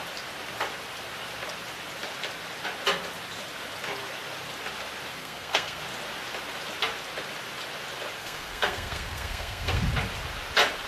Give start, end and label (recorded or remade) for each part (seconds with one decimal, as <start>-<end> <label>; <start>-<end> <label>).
0.0-5.2 recorded; 5.2-5.8 remade; 5.8-8.2 recorded; 8.2-9.8 remade; 9.8-10.9 recorded